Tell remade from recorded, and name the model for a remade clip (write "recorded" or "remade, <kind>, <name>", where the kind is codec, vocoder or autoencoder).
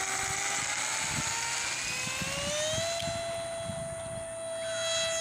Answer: recorded